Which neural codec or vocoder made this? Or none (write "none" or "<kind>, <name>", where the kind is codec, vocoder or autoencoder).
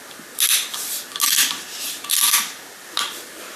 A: none